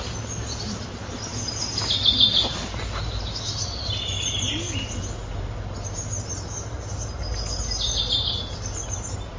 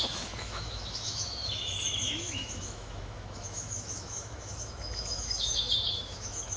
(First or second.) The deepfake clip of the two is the second